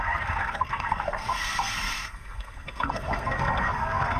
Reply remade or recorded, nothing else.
remade